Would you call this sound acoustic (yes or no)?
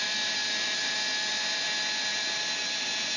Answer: yes